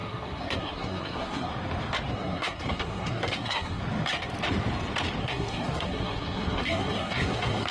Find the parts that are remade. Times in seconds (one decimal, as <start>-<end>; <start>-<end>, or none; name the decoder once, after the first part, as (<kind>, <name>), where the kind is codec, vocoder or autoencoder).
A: 0.0-1.5 (codec, SNAC); 2.1-3.8; 5.2-7.7